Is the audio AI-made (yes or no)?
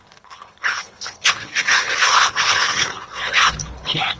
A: yes